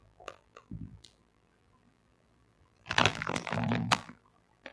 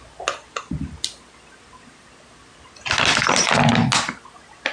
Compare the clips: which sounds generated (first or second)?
first